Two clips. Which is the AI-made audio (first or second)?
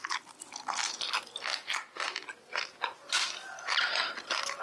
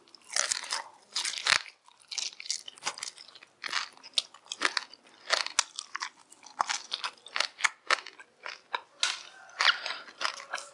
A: first